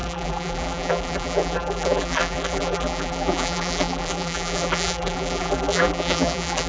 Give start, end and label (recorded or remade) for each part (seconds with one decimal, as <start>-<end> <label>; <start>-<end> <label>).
0.0-6.7 remade